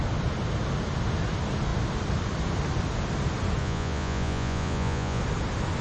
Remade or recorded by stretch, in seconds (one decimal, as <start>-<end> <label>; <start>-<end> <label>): 0.0-3.6 recorded; 3.6-5.2 remade; 5.2-5.8 recorded